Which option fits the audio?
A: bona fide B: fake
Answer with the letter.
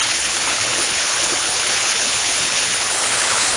B